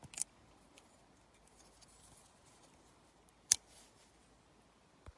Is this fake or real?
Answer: real